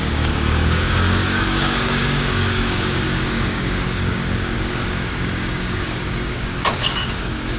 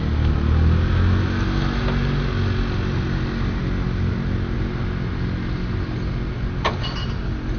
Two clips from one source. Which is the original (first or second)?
second